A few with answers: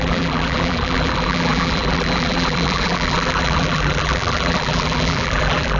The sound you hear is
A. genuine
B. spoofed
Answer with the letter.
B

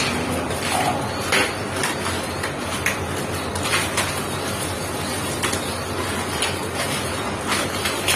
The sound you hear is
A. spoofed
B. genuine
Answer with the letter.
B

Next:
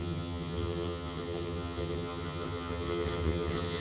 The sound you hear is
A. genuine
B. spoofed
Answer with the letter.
B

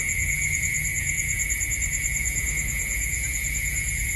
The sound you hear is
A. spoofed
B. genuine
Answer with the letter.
A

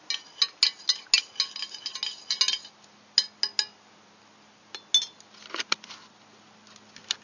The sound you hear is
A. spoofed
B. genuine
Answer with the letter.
B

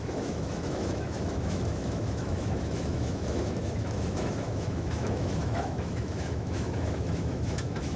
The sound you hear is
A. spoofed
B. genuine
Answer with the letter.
A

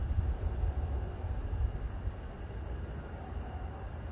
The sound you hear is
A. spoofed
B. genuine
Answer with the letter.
B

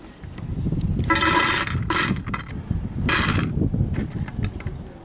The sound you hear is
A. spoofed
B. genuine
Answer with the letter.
B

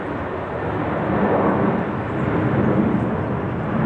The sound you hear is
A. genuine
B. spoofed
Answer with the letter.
A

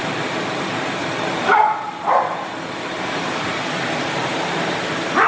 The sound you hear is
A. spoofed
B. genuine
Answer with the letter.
A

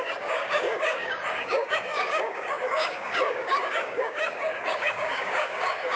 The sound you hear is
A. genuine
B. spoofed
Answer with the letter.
B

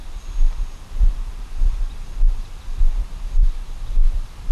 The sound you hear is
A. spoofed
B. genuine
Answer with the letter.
A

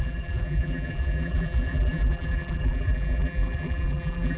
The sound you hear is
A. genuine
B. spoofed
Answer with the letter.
B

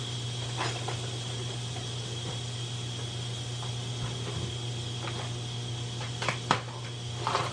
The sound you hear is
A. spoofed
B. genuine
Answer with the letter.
B